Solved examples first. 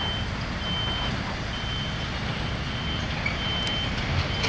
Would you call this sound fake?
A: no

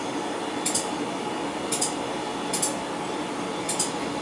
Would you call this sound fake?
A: no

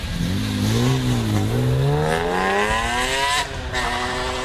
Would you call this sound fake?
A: no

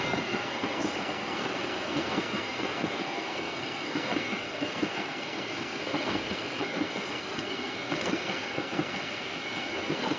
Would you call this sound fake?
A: yes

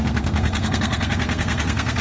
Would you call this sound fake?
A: yes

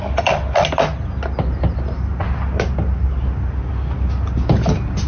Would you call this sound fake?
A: no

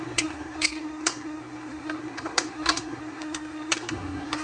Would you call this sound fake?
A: yes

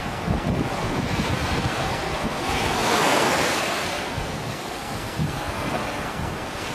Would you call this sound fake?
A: yes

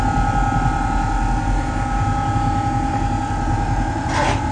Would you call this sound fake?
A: no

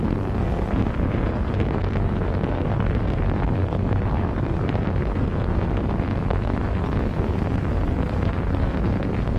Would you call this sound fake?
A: yes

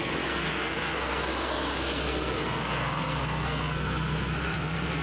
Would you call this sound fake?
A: yes